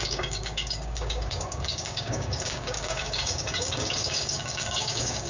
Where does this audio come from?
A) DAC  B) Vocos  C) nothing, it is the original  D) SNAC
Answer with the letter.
A